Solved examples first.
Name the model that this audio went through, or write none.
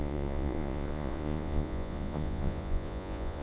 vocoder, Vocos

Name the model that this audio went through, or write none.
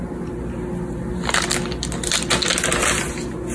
none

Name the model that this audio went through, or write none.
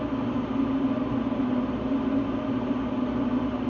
none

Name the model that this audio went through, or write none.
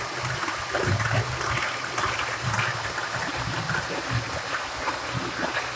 none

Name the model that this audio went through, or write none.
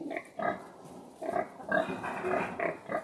none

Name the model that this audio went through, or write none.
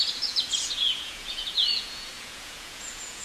vocoder, Vocos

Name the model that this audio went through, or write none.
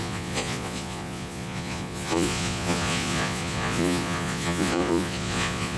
vocoder, Vocos